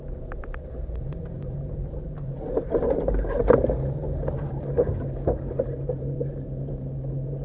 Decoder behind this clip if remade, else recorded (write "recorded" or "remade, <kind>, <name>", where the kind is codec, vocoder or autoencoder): remade, vocoder, BigVGAN v2